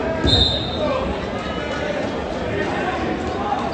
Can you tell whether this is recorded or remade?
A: recorded